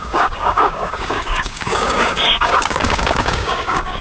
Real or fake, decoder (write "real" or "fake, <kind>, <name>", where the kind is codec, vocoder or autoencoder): fake, codec, DAC